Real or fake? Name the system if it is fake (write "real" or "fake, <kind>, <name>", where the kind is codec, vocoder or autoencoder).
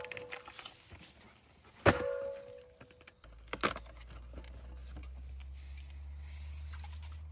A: real